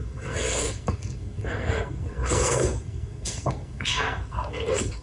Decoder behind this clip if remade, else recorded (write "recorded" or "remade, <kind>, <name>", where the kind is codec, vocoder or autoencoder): remade, codec, SNAC